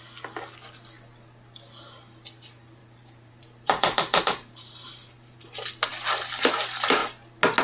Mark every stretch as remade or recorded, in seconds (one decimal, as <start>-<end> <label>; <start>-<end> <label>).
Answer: 0.0-2.8 recorded; 2.8-5.5 remade; 5.5-7.6 recorded